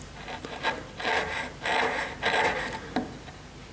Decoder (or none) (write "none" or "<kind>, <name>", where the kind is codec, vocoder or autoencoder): none